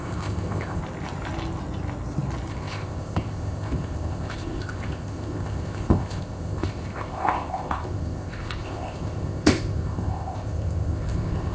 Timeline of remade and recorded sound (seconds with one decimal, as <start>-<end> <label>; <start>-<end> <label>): 0.0-0.8 remade; 0.8-2.5 recorded; 2.5-11.5 remade